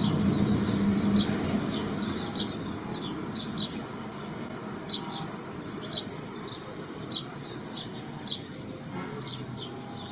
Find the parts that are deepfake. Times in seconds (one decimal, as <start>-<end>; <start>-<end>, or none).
none